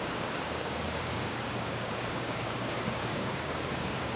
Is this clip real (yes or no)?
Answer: no